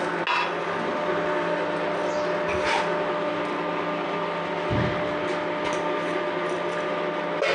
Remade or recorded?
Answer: recorded